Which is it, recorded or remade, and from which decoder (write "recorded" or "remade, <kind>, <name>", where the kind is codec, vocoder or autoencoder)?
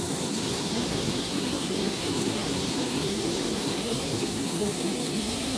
remade, codec, SNAC